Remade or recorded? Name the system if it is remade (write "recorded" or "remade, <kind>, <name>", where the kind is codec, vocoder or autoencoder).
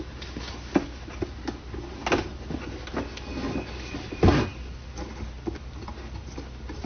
recorded